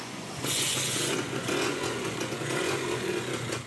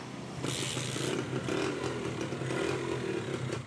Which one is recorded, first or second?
second